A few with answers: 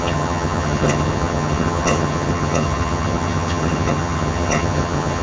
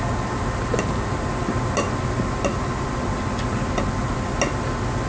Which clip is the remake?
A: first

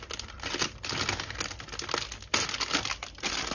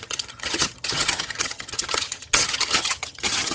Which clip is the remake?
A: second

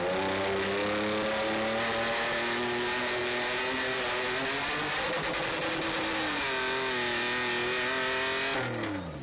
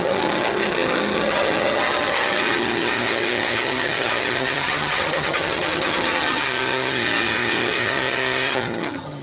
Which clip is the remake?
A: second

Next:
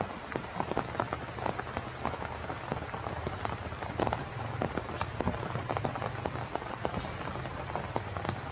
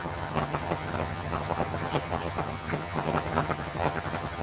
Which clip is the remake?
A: second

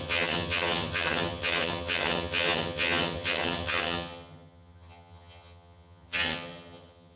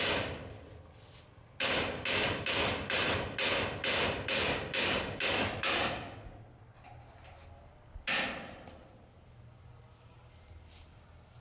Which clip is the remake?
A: first